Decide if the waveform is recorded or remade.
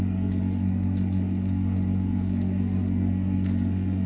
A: remade